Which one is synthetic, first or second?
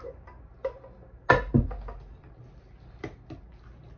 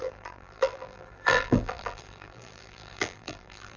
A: second